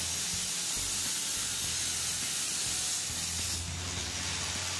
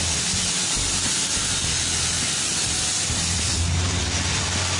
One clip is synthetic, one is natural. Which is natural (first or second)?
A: first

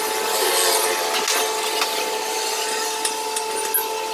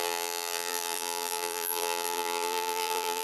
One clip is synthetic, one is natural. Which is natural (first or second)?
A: first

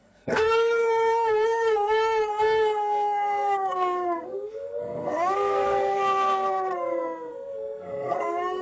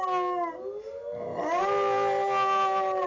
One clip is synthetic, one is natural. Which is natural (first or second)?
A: second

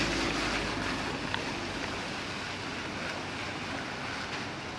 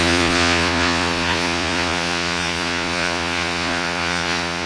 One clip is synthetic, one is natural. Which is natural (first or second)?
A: first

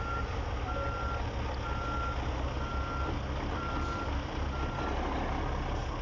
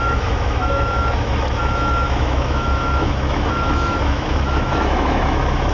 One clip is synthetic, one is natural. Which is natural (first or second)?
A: first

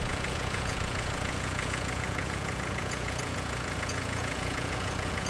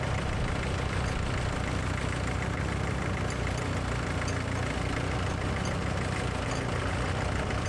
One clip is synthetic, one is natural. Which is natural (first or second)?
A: second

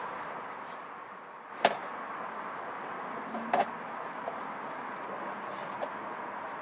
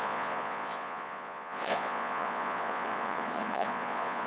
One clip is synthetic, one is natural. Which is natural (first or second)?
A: first